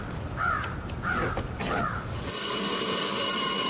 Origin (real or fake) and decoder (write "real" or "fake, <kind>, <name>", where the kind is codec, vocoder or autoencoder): real